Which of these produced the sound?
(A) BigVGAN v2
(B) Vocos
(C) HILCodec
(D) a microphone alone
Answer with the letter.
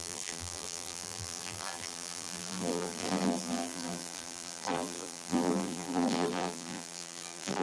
A